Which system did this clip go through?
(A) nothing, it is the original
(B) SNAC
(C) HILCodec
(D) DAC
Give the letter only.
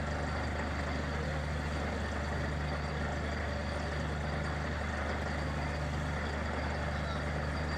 A